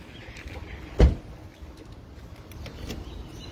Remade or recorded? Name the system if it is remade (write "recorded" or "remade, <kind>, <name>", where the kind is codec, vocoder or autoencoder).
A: recorded